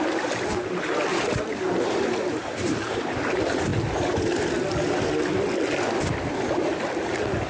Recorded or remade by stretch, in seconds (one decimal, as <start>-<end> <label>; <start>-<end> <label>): 0.0-1.1 recorded; 1.1-3.2 remade; 3.2-7.5 recorded